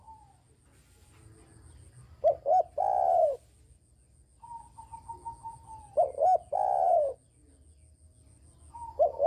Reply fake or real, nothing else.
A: real